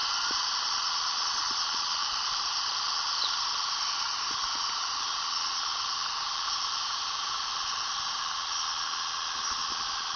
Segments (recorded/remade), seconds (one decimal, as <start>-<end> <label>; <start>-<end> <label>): 0.0-0.6 remade; 0.6-2.0 recorded; 2.0-5.2 remade; 5.2-5.7 recorded; 5.7-8.2 remade; 8.2-10.2 recorded